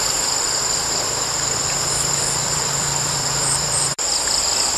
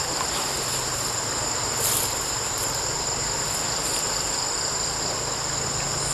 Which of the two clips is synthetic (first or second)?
first